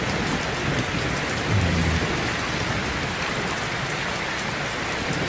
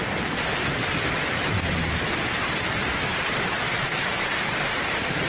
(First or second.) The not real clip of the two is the second